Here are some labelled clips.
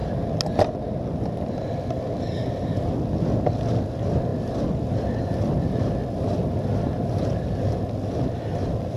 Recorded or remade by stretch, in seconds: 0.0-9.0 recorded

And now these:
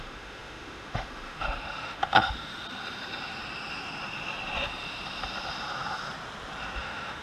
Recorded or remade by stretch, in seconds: 0.0-2.5 remade; 2.5-6.8 recorded; 6.8-7.2 remade

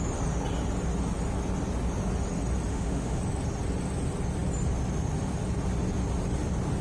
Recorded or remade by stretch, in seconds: 0.0-2.7 recorded; 2.7-3.2 remade; 3.2-6.8 recorded